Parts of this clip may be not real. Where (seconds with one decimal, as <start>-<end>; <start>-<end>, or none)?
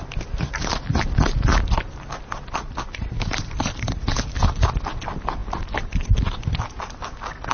none